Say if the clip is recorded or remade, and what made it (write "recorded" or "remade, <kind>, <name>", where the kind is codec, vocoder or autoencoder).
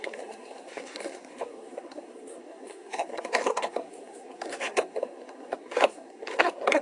remade, codec, SNAC